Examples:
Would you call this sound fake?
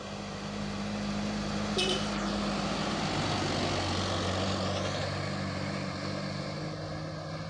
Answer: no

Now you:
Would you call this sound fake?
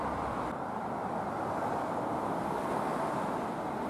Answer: no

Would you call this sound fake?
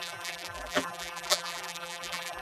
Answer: yes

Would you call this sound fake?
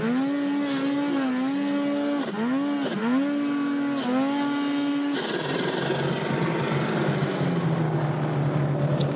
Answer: no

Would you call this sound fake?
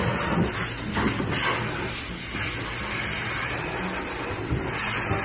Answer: no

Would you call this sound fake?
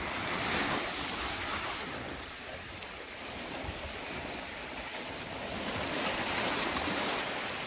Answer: no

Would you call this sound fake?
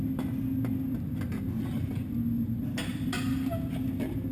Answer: no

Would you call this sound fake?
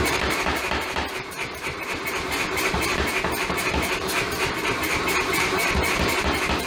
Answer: yes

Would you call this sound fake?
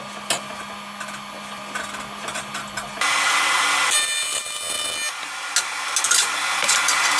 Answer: no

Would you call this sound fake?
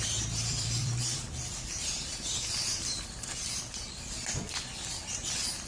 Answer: yes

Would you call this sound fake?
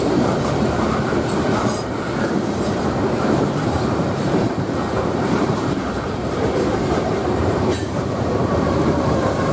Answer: yes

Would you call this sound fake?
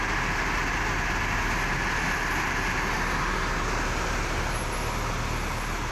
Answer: no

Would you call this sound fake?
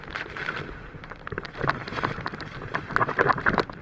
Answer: yes